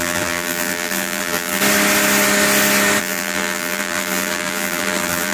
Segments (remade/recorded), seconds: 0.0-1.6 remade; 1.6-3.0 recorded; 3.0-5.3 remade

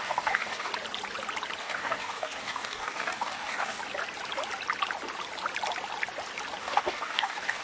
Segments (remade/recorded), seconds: 0.0-0.7 remade; 0.7-1.6 recorded; 1.6-3.8 remade; 3.8-6.6 recorded; 6.6-7.6 remade

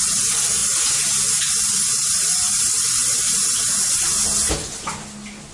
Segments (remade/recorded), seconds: 0.0-5.5 recorded

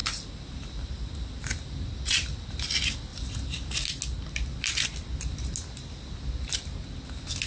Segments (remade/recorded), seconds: 0.0-0.9 remade; 0.9-3.1 recorded; 3.1-3.7 remade; 3.7-7.5 recorded

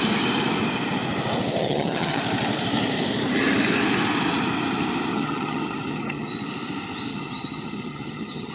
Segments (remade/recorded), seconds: 0.0-1.6 recorded; 1.6-2.2 remade; 2.2-5.1 recorded; 5.1-6.3 remade; 6.3-7.1 recorded; 7.1-8.5 remade

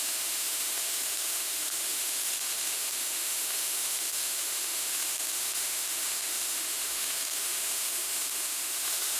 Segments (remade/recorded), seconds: 0.0-9.2 remade